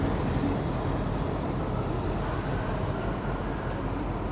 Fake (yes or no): no